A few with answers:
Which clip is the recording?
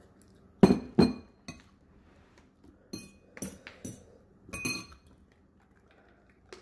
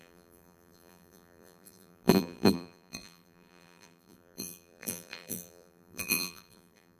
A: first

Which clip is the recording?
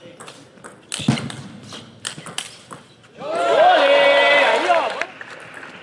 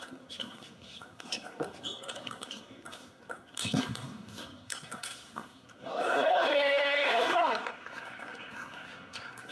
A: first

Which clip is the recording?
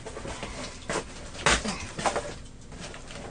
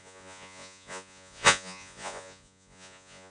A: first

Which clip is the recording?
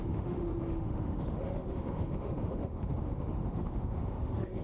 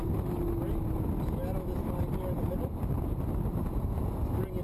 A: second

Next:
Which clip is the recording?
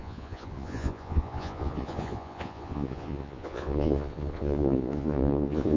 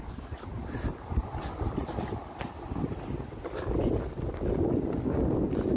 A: second